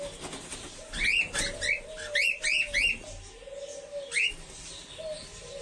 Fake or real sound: real